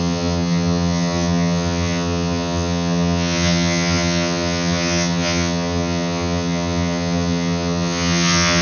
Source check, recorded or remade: remade